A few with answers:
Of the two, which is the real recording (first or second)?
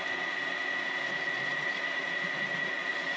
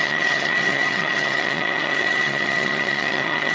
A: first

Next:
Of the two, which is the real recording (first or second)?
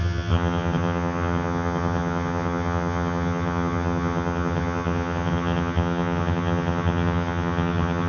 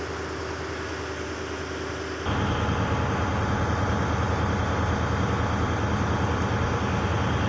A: second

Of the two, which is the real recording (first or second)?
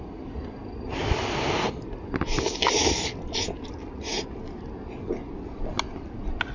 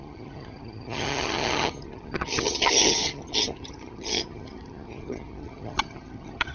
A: first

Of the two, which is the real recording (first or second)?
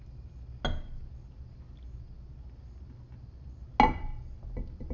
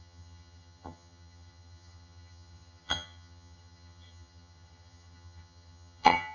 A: first